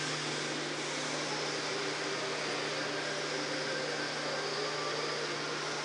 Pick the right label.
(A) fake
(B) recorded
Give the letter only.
B